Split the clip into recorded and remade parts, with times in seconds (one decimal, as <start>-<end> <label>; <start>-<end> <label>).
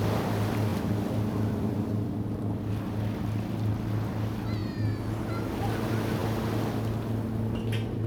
0.0-0.7 recorded; 0.7-2.7 remade; 2.7-8.1 recorded